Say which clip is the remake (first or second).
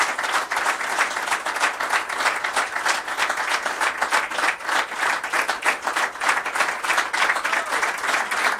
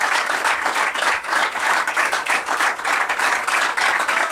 second